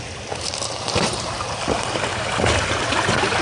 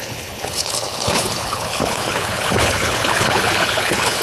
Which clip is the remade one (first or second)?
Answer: second